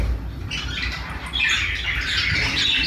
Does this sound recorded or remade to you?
recorded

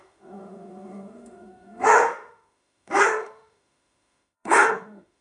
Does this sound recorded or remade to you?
remade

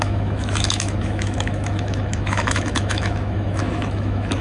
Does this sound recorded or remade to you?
remade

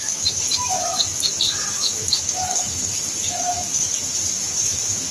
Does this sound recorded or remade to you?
remade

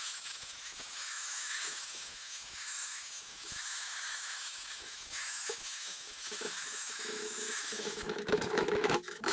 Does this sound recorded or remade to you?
remade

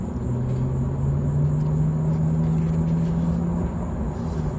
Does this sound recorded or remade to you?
recorded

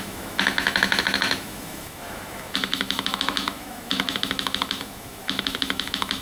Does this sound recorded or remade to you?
remade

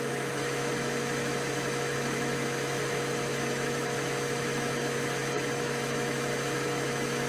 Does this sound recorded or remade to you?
remade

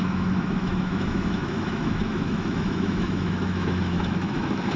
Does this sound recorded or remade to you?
remade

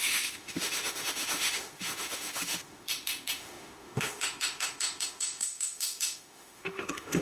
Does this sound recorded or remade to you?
remade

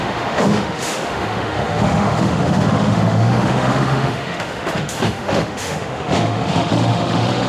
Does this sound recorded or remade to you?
remade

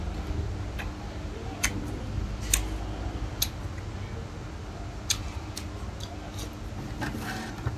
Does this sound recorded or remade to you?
recorded